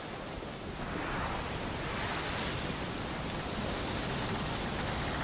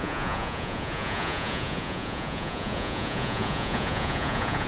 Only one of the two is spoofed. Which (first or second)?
second